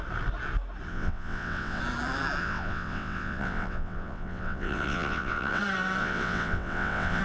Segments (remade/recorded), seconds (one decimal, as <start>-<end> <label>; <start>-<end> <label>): 0.0-0.9 recorded; 0.9-1.8 remade; 1.8-2.4 recorded; 2.4-5.6 remade; 5.6-6.0 recorded; 6.0-7.2 remade